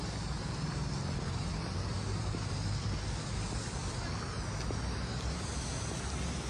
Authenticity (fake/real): real